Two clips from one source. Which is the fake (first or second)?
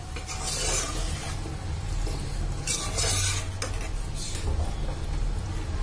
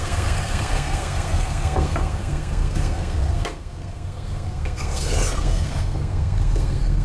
second